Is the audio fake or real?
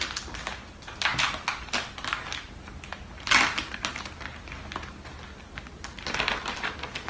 real